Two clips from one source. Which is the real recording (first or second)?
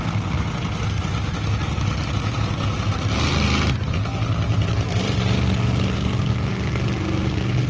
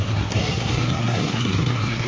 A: first